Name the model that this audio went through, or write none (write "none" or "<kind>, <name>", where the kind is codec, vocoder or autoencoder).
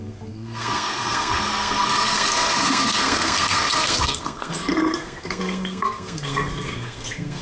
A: codec, SNAC